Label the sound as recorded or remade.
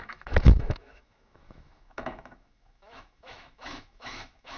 remade